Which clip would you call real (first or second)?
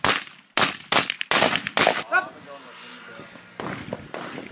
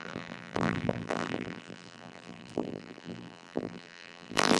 first